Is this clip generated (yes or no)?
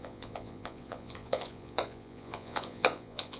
yes